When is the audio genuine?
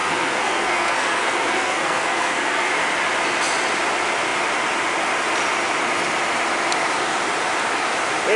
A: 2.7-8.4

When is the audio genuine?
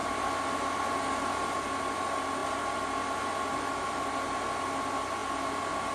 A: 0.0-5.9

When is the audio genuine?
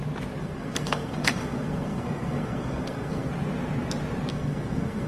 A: 0.0-0.4; 3.3-4.3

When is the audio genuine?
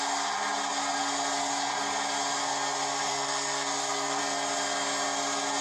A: 0.0-3.1; 4.2-5.6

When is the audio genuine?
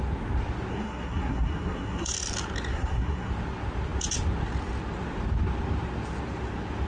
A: 0.0-0.7; 2.1-2.7; 3.3-6.9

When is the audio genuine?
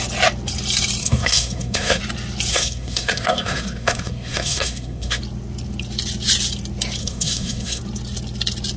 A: 0.0-1.0; 2.0-2.5; 5.2-7.0; 7.8-8.8